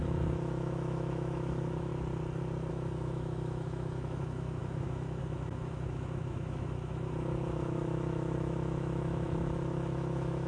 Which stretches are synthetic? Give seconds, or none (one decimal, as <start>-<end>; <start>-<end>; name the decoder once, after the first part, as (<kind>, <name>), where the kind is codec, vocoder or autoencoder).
0.0-1.9 (autoencoder, DAC-VAE); 2.7-10.5